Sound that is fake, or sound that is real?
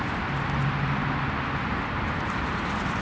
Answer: real